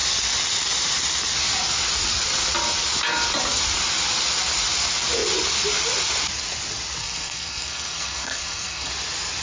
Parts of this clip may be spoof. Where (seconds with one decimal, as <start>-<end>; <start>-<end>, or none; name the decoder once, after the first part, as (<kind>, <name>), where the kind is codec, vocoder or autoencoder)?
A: 7.0-8.9 (codec, SNAC)